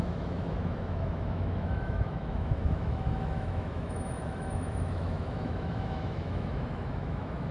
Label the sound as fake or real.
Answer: fake